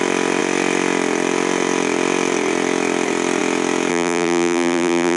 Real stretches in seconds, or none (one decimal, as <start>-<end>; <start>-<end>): 0.0-3.9